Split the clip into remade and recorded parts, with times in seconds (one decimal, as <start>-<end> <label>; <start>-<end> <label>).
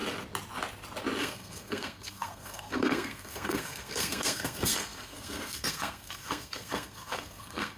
0.0-1.2 recorded; 1.2-7.8 remade